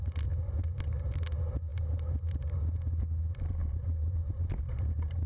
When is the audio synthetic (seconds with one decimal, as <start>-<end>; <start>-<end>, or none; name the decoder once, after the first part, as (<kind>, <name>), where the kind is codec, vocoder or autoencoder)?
none